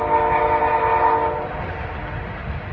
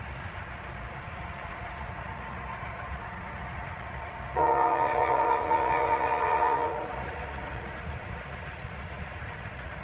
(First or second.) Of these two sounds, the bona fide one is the first